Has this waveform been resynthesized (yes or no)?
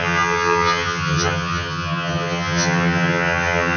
yes